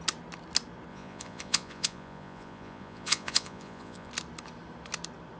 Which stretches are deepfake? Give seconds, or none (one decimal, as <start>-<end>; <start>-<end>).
0.9-4.1